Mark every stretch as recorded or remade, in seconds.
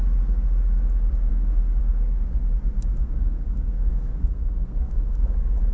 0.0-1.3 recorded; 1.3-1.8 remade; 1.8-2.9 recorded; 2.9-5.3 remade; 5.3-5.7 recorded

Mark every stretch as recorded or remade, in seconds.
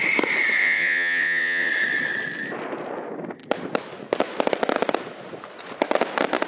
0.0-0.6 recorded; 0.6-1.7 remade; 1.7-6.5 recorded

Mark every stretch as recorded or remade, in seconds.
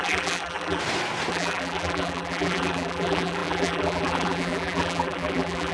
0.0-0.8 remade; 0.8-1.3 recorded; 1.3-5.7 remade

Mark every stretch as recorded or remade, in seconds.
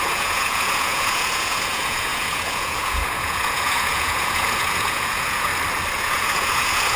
0.0-5.5 remade; 5.5-6.0 recorded; 6.0-7.0 remade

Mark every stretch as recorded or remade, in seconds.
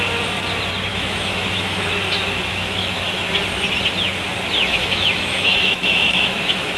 0.0-0.9 recorded; 0.9-1.9 remade; 1.9-2.5 recorded; 2.5-3.3 remade; 3.3-4.7 recorded; 4.7-6.8 remade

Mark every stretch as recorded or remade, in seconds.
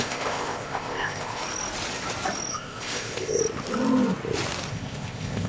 0.0-1.4 remade; 1.4-2.5 recorded; 2.5-3.4 remade; 3.4-4.7 recorded; 4.7-5.5 remade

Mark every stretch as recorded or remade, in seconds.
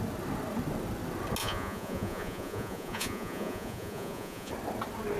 0.0-1.4 recorded; 1.4-4.5 remade; 4.5-5.2 recorded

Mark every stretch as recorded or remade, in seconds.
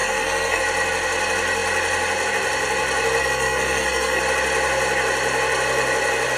0.0-0.6 remade; 0.6-3.2 recorded; 3.2-4.2 remade; 4.2-6.4 recorded